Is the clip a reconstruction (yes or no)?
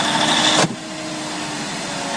no